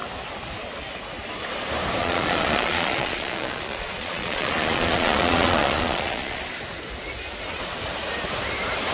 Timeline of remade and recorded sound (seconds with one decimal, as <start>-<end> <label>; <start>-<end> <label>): 0.0-2.0 recorded; 2.0-6.4 remade; 6.4-8.9 recorded